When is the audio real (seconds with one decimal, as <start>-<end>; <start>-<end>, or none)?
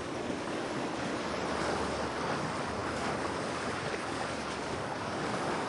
1.1-1.6